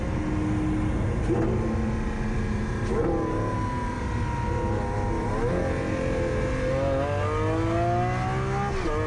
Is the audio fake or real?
real